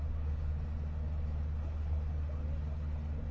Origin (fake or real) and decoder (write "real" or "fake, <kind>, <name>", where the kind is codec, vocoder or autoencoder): real